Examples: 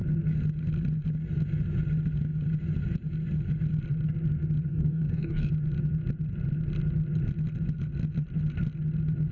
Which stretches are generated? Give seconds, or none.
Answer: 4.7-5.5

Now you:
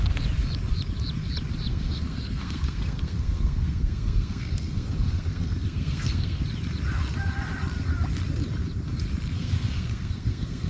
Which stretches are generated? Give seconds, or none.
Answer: 1.7-6.4; 9.3-10.7

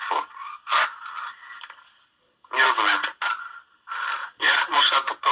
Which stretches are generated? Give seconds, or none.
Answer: 4.2-4.8

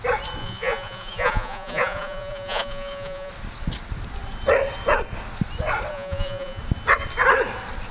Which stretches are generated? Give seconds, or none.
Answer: 0.4-3.3; 5.9-6.6

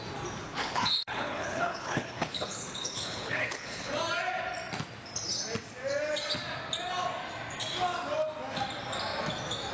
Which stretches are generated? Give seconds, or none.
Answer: 0.4-3.9

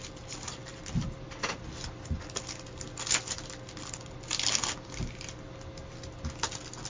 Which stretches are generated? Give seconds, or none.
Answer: none